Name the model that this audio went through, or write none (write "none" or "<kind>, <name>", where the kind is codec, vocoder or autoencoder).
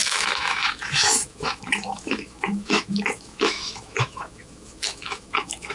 autoencoder, DAC-VAE